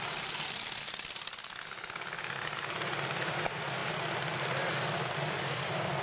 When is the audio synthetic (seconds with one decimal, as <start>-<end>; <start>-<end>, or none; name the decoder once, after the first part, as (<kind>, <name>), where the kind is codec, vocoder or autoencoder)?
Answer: none